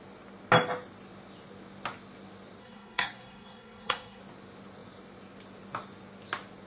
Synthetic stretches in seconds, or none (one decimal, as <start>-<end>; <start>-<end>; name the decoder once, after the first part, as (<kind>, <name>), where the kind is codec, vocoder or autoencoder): 2.6-4.2 (codec, SNAC)